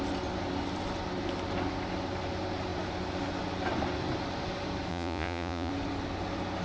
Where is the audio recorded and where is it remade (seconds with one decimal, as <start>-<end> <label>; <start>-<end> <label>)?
0.0-4.9 recorded; 4.9-5.7 remade; 5.7-6.6 recorded